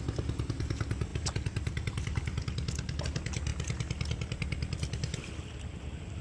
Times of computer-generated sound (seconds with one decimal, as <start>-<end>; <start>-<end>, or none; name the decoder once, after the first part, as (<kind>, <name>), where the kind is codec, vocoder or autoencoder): none